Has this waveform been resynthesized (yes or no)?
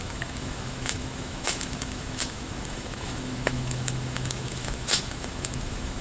yes